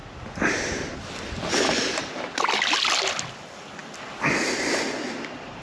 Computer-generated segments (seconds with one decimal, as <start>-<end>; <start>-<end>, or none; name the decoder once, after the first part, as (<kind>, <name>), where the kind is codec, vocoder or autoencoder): none